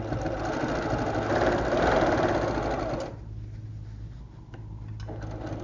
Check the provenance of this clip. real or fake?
real